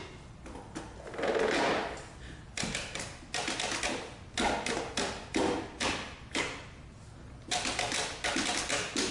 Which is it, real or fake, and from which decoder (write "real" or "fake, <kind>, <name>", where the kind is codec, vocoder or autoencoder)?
real